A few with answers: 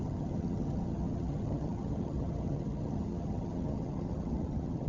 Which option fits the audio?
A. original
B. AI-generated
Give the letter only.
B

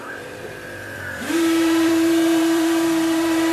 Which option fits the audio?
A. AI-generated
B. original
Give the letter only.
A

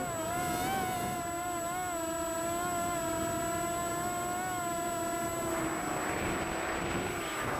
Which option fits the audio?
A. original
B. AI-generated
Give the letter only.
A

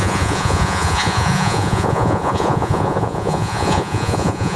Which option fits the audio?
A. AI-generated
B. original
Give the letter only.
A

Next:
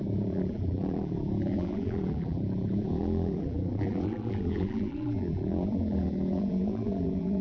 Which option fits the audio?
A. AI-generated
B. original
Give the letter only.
A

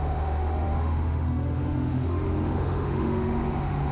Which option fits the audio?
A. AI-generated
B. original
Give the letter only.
A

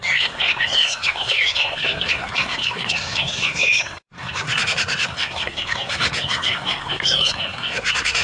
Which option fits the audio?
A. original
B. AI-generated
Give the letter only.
B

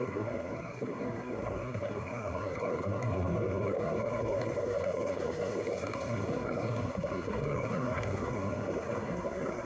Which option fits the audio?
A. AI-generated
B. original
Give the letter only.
A